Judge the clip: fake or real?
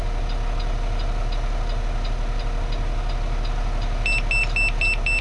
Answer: real